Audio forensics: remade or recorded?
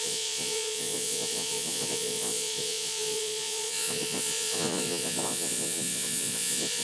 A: remade